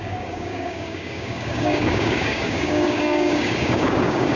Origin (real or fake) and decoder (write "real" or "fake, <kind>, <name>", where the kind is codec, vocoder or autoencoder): fake, codec, DAC